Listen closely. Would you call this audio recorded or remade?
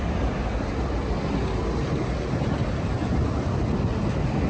recorded